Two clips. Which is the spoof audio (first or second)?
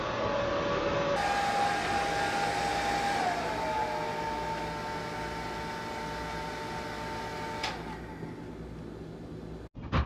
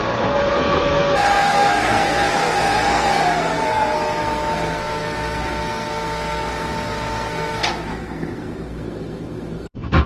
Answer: second